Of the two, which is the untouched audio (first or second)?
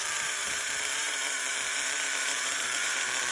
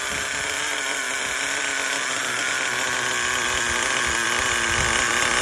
second